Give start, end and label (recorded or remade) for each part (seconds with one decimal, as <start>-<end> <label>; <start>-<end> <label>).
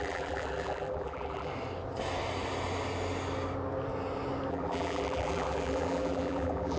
0.0-1.5 remade; 1.5-4.5 recorded; 4.5-6.8 remade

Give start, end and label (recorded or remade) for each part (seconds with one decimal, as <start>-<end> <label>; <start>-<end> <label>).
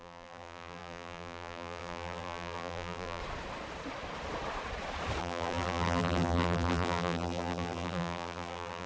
0.0-3.2 remade; 3.2-5.2 recorded; 5.2-8.9 remade